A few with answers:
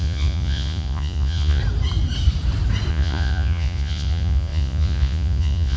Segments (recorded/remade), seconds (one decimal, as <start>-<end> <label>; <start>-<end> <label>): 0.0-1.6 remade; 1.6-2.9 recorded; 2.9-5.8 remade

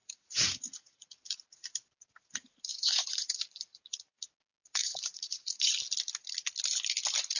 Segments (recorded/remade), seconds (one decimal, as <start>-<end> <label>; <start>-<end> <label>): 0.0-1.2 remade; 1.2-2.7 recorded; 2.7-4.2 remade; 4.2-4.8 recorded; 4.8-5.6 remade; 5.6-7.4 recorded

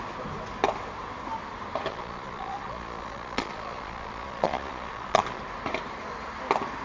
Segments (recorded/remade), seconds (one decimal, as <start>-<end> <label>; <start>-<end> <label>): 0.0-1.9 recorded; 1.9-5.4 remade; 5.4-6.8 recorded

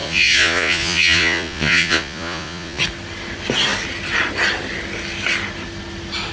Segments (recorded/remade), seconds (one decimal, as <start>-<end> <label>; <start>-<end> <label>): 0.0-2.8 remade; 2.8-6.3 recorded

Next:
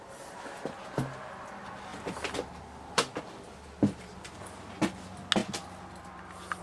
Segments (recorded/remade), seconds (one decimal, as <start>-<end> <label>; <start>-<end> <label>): 0.0-6.6 recorded

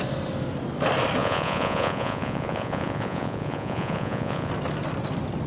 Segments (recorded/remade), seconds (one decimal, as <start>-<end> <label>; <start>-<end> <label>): 0.0-1.2 recorded; 1.2-4.5 remade; 4.5-5.5 recorded